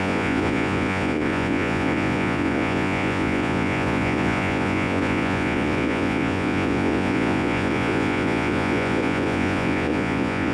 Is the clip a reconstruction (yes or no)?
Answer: yes